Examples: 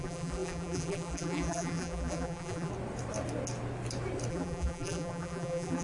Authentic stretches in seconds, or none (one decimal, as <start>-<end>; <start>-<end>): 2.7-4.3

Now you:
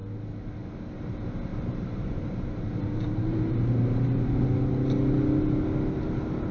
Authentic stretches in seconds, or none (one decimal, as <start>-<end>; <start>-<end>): 0.0-1.5; 4.4-6.5

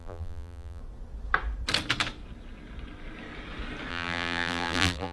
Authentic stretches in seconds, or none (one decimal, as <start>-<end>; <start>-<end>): 0.8-3.9

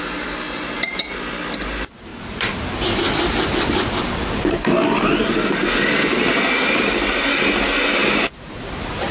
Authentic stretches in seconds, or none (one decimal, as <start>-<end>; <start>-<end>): 0.0-2.1; 2.7-8.0

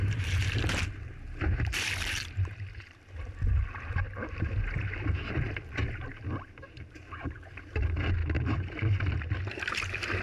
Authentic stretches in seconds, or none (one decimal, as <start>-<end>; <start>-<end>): 2.5-5.6; 8.2-9.5

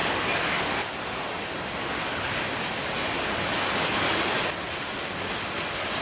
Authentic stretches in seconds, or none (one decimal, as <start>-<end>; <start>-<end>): 0.0-6.0

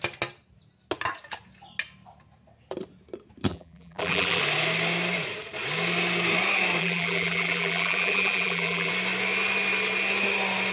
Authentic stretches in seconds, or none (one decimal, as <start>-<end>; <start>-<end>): 0.0-3.5; 4.4-6.8; 8.9-10.7

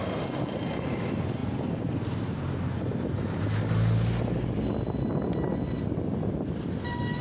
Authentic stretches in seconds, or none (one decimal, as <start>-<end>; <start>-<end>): 0.0-7.2